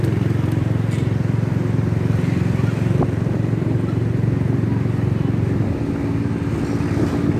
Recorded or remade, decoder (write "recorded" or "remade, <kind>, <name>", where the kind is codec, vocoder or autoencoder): recorded